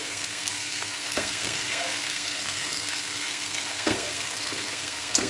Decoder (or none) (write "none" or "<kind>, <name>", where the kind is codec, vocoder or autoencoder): codec, SNAC